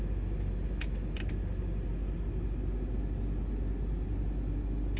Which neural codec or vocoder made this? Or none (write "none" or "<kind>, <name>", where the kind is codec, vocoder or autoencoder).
none